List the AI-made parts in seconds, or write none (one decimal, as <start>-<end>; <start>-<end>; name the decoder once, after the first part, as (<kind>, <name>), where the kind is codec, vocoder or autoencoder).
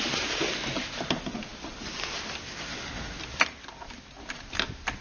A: none